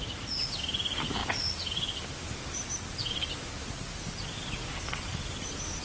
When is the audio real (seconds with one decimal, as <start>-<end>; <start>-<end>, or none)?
0.0-5.8